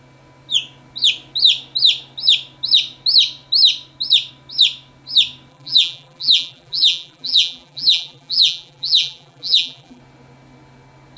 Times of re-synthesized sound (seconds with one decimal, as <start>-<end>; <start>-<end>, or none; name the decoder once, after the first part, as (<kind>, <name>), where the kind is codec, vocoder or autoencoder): 5.5-10.0 (vocoder, BigVGAN v2)